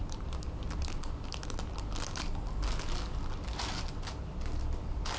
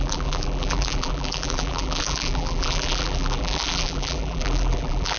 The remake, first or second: second